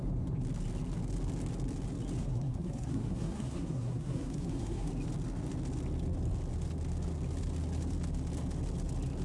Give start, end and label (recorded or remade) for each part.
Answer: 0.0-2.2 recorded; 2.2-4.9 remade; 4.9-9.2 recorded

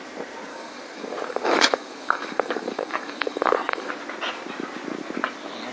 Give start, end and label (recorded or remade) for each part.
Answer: 0.0-0.5 recorded; 0.5-3.9 remade; 3.9-5.7 recorded